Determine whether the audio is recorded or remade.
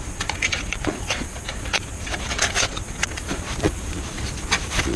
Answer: remade